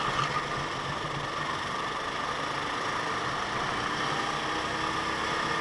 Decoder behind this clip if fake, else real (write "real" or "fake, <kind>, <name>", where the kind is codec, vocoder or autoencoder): real